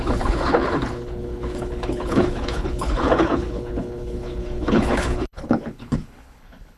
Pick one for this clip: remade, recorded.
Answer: remade